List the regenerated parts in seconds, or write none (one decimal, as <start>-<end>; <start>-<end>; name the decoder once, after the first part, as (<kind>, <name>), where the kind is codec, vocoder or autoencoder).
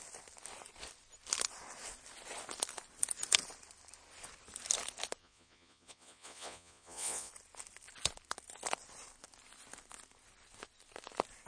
5.2-7.3 (vocoder, Vocos)